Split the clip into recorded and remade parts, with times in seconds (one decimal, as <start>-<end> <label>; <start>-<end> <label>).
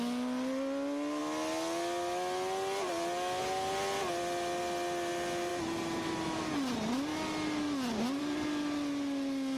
0.0-9.6 recorded